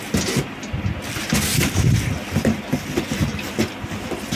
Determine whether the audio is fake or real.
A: real